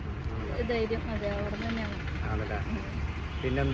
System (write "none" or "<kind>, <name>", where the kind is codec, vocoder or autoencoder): none